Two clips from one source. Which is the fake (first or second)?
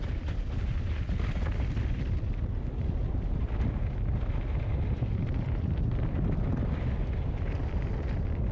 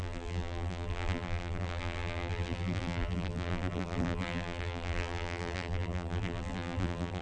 second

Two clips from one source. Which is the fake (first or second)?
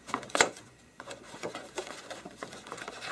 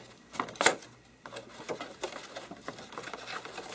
first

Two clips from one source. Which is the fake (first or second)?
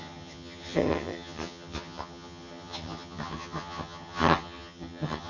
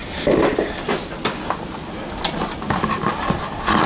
first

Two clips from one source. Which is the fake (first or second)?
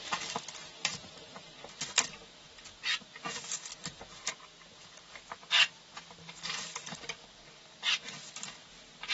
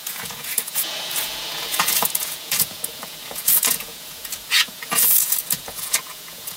second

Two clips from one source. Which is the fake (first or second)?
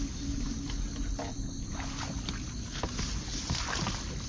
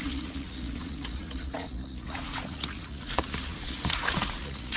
second